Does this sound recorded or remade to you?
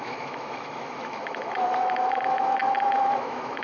remade